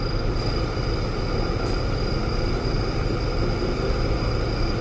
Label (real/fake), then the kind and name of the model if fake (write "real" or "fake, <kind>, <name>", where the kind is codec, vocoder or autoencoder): real